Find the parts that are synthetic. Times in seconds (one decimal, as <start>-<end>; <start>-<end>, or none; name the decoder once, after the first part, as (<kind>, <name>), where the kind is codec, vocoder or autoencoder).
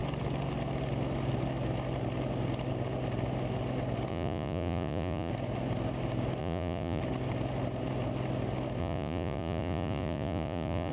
4.1-5.3 (vocoder, Vocos); 6.4-7.0; 8.8-10.9